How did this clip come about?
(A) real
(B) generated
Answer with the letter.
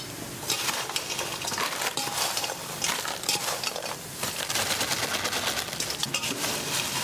A